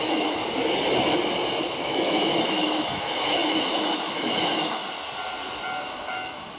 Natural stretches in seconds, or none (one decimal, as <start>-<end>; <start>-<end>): 0.4-1.8; 4.8-5.8

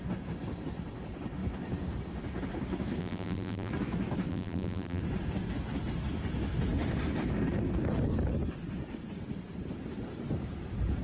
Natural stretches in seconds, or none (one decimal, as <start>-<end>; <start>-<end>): 0.0-3.0; 3.7-4.3; 5.0-11.0

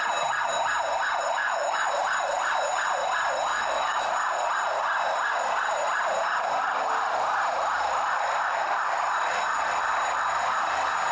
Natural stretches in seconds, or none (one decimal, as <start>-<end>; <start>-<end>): 0.0-1.4; 1.9-3.5; 4.0-11.1

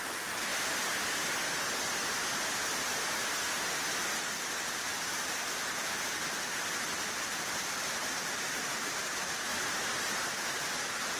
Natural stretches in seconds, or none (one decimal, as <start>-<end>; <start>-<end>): 0.5-4.2; 9.5-10.3